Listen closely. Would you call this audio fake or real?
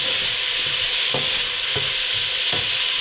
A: real